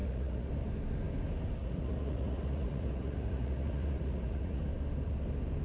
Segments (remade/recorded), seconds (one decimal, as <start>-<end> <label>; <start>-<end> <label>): 0.0-0.5 remade; 0.5-1.6 recorded; 1.6-4.6 remade; 4.6-5.6 recorded